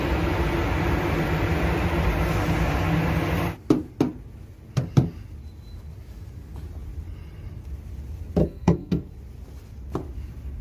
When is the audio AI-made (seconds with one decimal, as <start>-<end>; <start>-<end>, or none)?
8.4-9.1